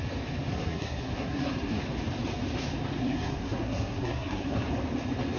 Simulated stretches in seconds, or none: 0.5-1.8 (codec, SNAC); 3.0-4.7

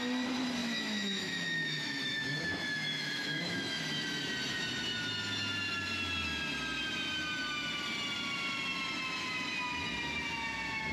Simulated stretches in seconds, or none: 0.6-3.8 (autoencoder, DAC-VAE)

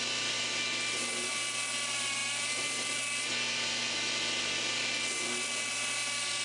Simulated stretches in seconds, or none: none

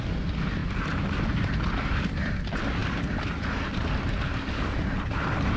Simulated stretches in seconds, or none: none

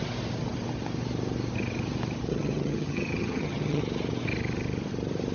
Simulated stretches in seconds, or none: 2.3-3.8 (vocoder, HiFi-GAN)

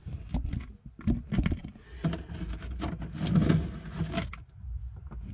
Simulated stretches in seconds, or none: none